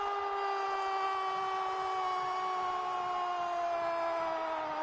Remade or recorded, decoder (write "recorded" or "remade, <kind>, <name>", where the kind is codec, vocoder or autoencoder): recorded